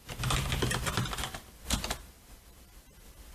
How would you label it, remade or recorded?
recorded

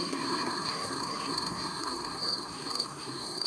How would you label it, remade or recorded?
remade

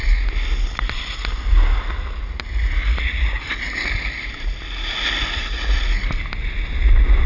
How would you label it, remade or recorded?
recorded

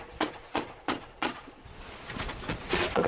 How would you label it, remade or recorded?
remade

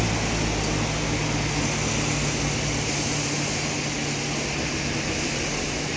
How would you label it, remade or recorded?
recorded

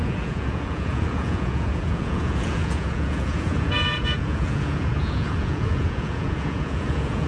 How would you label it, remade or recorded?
remade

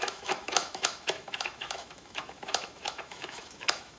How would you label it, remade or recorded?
remade